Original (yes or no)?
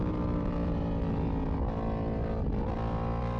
yes